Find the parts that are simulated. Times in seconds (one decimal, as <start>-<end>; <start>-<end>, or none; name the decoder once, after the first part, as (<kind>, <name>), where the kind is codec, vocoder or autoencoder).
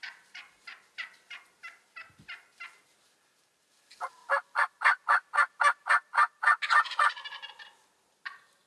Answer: none